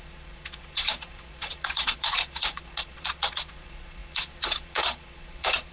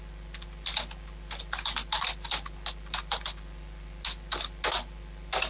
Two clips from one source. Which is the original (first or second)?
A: second